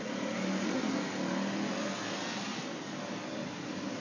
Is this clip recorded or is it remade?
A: recorded